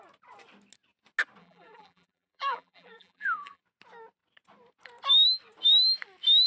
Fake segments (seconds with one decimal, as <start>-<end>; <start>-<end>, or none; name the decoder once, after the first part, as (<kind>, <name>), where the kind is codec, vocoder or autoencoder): 1.4-3.6 (vocoder, BigVGAN v2)